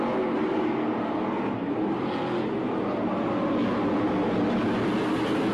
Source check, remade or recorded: recorded